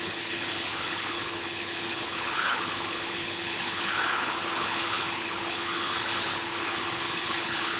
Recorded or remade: remade